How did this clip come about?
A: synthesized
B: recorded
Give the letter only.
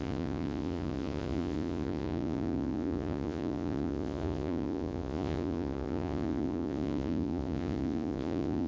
A